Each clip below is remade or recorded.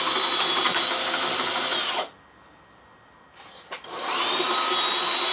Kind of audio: recorded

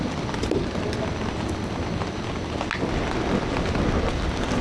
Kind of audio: recorded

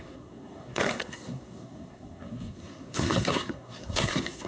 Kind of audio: remade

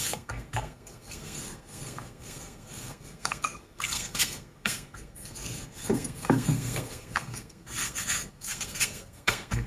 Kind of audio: remade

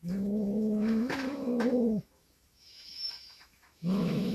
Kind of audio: remade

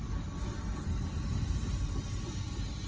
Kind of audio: recorded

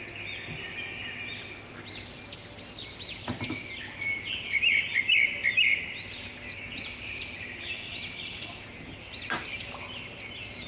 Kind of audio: recorded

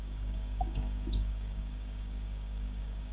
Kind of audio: remade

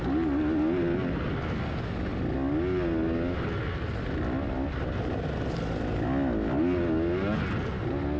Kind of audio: recorded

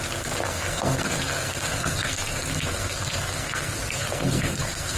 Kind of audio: remade